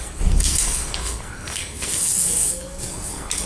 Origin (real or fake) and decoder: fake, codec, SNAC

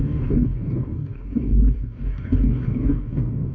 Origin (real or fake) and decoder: fake, codec, DAC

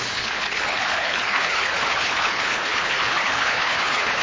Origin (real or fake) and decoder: fake, codec, HILCodec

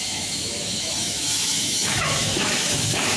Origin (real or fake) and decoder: fake, autoencoder, DAC-VAE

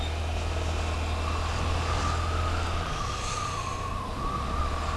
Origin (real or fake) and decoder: real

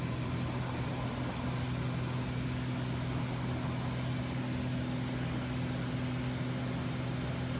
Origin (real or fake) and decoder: real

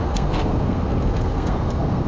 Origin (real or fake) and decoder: fake, codec, SNAC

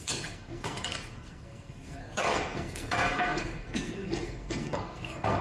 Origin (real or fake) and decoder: fake, codec, SNAC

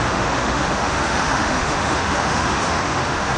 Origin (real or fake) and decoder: fake, autoencoder, DAC-VAE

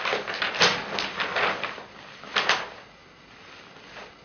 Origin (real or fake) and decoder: real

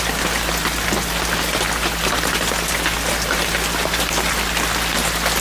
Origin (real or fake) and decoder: real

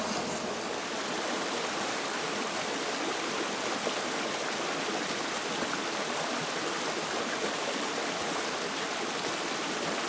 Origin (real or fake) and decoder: real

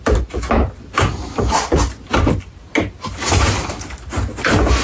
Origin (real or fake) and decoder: real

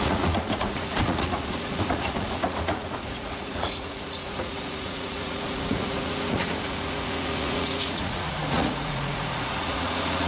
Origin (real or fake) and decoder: fake, vocoder, Vocos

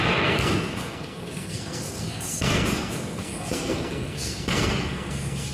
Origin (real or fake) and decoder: fake, codec, SNAC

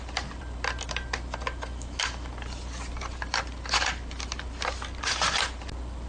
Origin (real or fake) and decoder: real